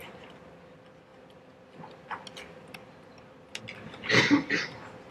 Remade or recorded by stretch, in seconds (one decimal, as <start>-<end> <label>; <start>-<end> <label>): 0.0-5.1 recorded